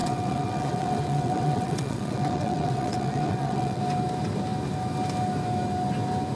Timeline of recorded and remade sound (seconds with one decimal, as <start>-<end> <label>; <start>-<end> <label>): 0.0-3.8 remade; 3.8-6.4 recorded